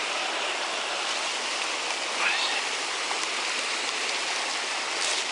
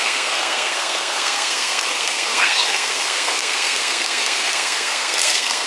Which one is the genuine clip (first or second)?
first